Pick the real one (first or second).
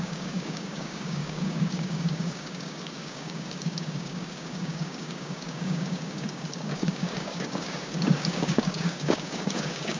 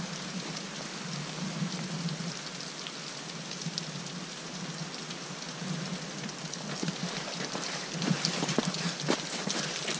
second